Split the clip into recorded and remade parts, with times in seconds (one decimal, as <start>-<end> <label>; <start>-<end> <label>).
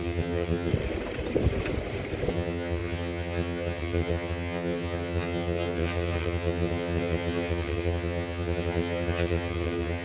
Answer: 0.0-0.7 remade; 0.7-2.3 recorded; 2.3-10.0 remade